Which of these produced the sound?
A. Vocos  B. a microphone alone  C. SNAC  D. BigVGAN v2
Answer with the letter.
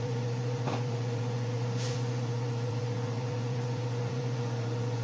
A